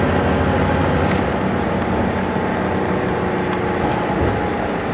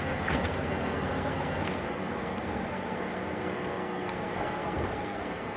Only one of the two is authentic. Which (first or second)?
first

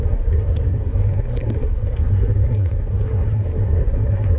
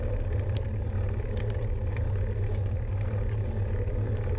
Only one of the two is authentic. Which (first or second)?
second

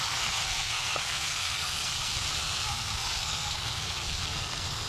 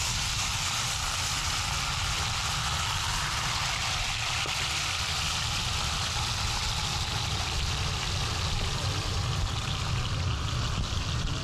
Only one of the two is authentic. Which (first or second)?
second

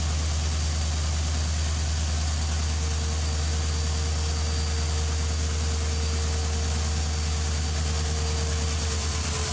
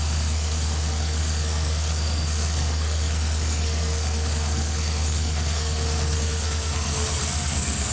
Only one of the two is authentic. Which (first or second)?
first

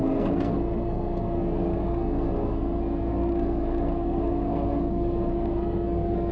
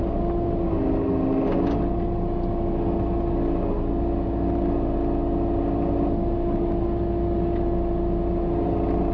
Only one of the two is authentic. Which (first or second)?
second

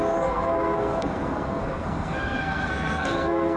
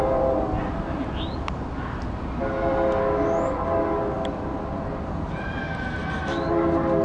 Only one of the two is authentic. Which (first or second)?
second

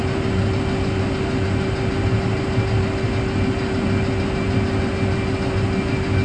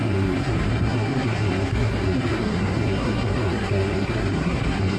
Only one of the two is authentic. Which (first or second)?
first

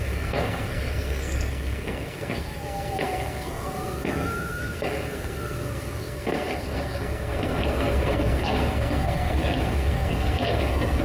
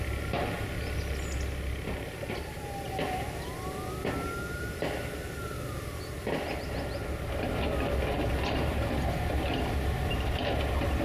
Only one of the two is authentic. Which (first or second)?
second